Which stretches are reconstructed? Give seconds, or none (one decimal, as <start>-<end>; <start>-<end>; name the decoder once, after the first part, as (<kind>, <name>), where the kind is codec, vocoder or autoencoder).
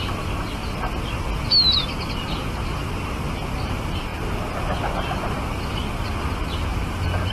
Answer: none